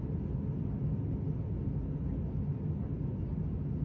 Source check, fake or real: real